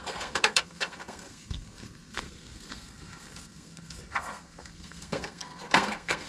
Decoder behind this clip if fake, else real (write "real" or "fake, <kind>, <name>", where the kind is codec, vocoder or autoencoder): fake, codec, SNAC